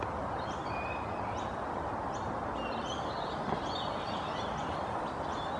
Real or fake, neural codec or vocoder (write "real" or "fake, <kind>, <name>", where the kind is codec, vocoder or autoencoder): real